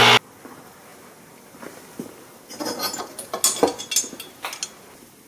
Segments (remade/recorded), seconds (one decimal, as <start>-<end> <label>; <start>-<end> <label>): 0.0-5.3 recorded